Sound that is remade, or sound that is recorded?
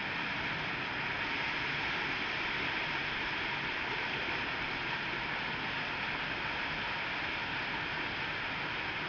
recorded